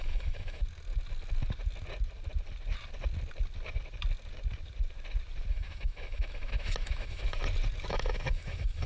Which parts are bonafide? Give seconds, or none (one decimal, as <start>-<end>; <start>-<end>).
0.6-5.5; 7.4-7.9